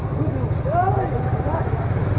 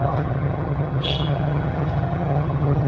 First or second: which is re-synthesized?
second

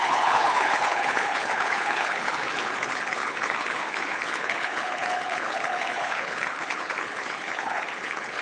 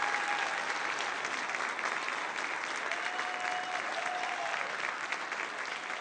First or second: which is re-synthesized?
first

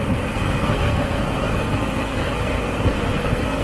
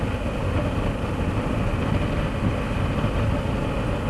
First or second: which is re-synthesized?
first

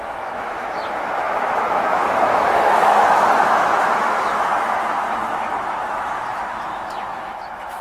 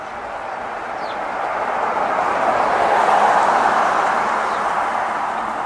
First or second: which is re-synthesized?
first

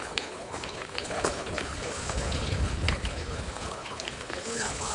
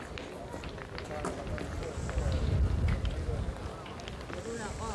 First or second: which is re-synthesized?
first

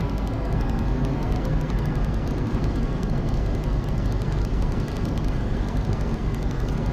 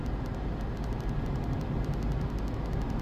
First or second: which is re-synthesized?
first